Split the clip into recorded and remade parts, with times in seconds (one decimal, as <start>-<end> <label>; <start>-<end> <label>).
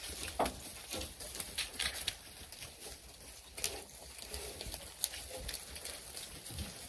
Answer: 0.0-0.7 recorded; 0.7-4.8 remade; 4.8-6.9 recorded